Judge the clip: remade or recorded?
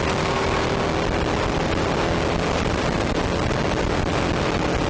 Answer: recorded